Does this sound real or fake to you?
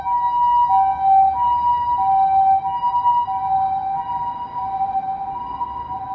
real